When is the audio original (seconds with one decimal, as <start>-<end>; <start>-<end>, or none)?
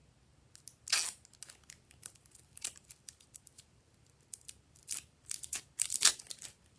0.0-1.6